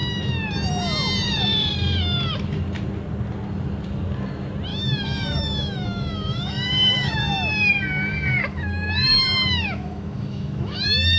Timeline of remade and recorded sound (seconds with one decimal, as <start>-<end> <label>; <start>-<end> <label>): 0.0-4.7 recorded; 4.7-7.7 remade; 7.7-8.5 recorded; 8.5-11.2 remade